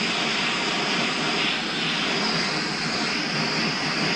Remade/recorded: recorded